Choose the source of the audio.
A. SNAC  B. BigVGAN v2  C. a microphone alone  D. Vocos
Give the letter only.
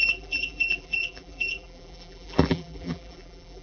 B